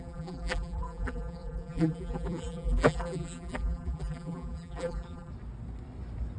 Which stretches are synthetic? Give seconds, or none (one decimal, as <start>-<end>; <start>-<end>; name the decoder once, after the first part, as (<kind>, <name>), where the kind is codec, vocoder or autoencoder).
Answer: 0.0-5.3 (vocoder, BigVGAN v2)